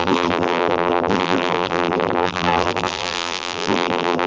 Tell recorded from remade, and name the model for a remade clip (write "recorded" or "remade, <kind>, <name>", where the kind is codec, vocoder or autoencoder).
remade, vocoder, BigVGAN v2